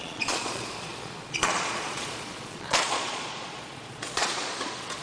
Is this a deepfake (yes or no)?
yes